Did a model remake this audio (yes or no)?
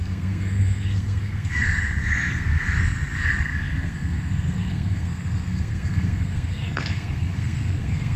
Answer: yes